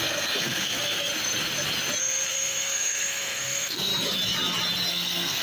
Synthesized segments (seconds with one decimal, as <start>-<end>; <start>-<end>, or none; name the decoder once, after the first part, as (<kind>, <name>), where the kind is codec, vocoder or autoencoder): 0.0-1.1 (codec, SNAC); 2.0-3.9; 4.9-5.4